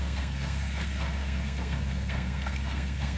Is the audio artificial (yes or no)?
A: yes